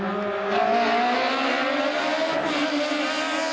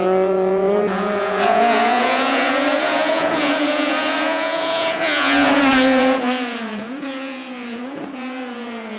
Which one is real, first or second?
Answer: first